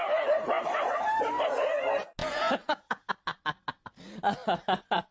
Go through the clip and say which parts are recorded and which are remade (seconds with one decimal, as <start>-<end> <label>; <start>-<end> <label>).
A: 0.0-2.2 recorded; 2.2-3.1 remade; 3.1-5.1 recorded